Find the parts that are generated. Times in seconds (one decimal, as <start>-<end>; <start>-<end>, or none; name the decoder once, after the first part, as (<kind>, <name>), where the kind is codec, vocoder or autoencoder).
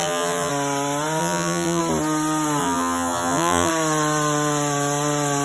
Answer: 0.0-0.5 (vocoder, BigVGAN v2); 1.2-1.8; 2.6-3.7